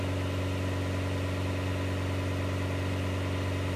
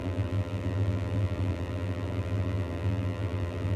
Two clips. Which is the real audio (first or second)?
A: first